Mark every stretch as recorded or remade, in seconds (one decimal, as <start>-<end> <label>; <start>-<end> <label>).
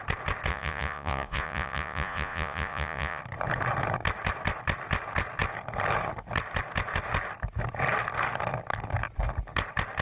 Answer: 0.0-0.5 recorded; 0.5-3.2 remade; 3.2-10.0 recorded